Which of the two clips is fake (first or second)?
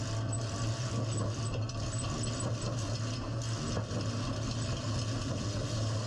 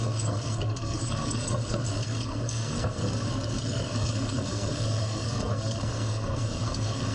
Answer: second